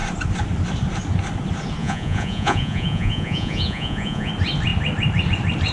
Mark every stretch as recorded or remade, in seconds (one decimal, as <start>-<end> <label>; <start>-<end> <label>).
0.0-1.8 recorded; 1.8-4.3 remade; 4.3-5.7 recorded